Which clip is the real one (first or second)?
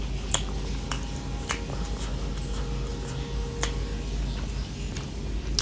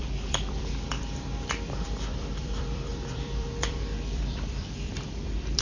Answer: first